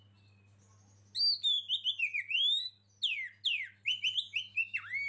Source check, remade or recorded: recorded